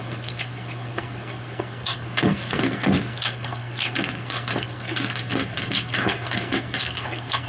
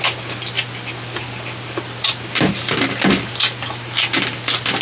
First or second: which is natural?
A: second